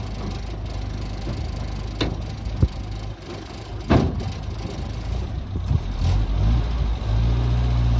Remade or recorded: recorded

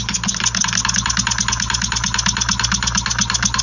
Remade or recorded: recorded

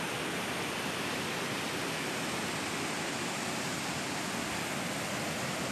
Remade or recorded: recorded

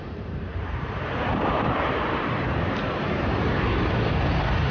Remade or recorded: remade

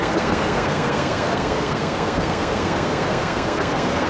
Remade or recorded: remade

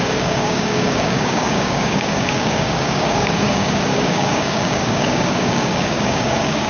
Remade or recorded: remade